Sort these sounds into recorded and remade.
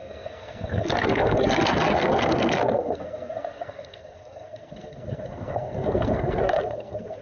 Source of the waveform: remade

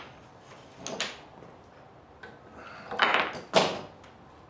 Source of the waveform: recorded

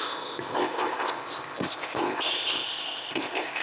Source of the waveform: remade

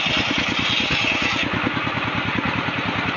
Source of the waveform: recorded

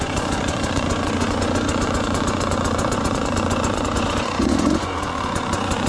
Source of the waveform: remade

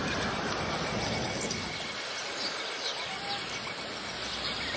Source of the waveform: recorded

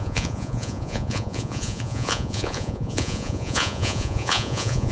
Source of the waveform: remade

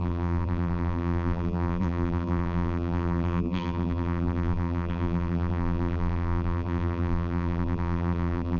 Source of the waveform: remade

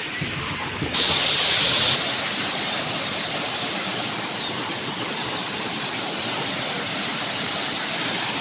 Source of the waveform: remade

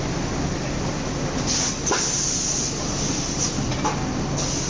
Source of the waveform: recorded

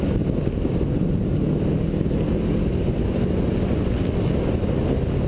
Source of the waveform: recorded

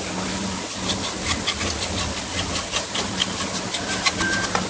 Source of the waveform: recorded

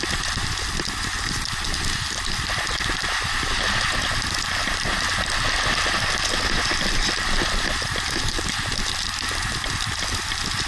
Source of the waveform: recorded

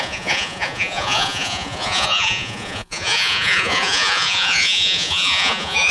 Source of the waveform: remade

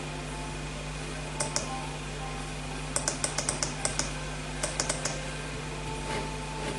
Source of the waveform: recorded